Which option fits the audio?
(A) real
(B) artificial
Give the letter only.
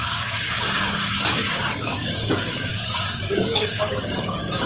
B